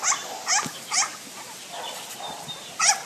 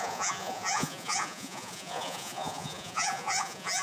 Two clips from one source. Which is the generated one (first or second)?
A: second